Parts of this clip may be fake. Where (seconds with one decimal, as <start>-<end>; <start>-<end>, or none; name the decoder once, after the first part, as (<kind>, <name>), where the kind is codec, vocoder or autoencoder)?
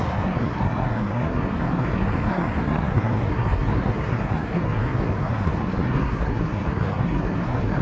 0.0-7.8 (codec, SNAC)